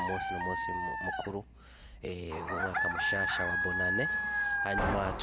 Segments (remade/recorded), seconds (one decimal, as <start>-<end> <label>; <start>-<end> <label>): 0.0-1.8 recorded; 1.8-2.6 remade; 2.6-5.2 recorded

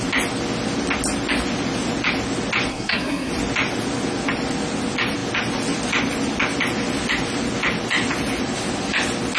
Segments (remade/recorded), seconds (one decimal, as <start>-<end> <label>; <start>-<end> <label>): 0.0-2.7 recorded; 2.7-3.3 remade; 3.3-9.4 recorded

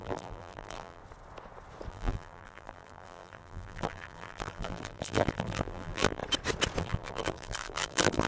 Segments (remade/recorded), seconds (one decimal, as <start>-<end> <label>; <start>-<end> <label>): 0.0-1.0 remade; 1.0-1.9 recorded; 1.9-6.2 remade; 6.2-6.8 recorded; 6.8-8.3 remade

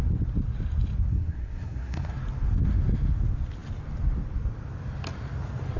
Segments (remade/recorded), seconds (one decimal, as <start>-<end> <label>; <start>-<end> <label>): 0.0-1.1 recorded; 1.1-2.1 remade; 2.1-5.8 recorded

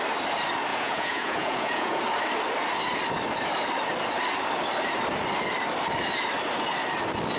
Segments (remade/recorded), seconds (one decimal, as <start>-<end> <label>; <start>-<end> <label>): 0.0-0.7 recorded; 0.7-2.0 remade; 2.0-7.4 recorded

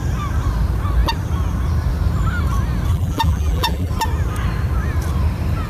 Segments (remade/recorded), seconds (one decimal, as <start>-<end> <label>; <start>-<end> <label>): 0.0-2.9 recorded; 2.9-3.9 remade; 3.9-5.7 recorded

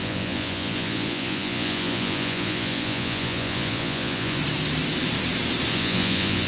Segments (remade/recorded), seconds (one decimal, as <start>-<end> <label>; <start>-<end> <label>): 0.0-4.4 remade; 4.4-5.7 recorded; 5.7-6.5 remade

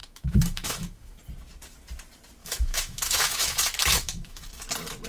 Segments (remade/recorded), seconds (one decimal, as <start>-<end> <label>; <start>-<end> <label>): 0.0-1.2 remade; 1.2-2.4 recorded; 2.4-4.5 remade; 4.5-5.1 recorded